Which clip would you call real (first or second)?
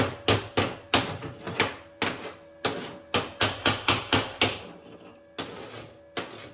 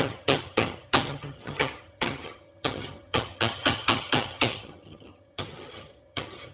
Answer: first